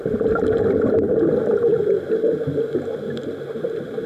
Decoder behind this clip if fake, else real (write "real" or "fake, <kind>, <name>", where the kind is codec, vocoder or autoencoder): real